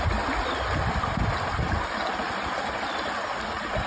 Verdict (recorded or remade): recorded